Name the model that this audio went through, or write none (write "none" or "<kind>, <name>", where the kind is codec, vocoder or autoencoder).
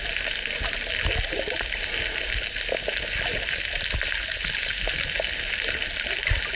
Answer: none